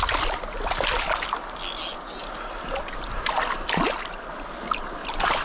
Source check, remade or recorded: recorded